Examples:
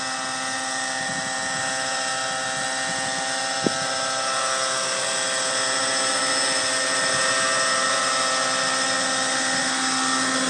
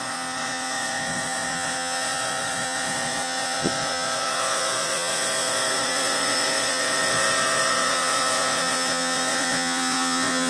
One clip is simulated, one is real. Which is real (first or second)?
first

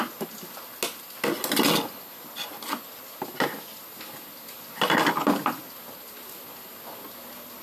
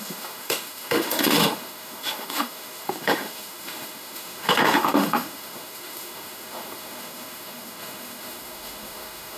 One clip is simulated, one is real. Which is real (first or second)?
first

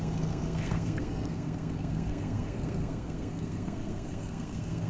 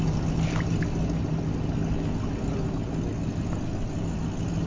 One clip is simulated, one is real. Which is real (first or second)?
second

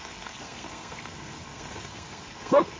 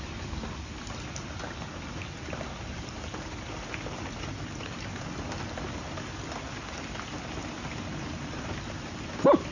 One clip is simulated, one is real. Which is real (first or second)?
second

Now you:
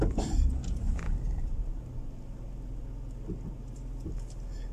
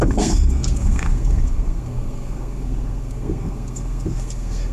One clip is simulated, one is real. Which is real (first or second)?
first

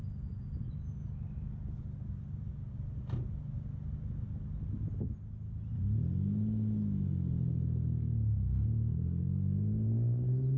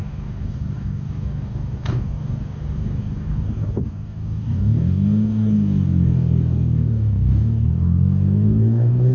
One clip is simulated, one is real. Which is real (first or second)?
first